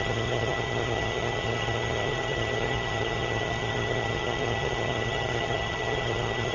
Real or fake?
fake